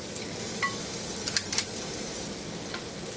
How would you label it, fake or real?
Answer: real